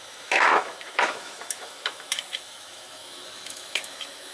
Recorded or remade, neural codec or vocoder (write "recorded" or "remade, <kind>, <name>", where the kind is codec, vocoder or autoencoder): remade, autoencoder, DAC-VAE